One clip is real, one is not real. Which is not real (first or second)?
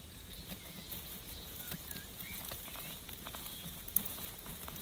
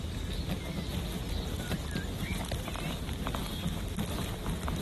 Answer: first